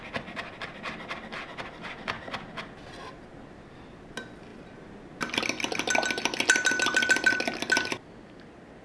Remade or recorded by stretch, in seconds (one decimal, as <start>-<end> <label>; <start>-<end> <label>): 0.0-8.8 recorded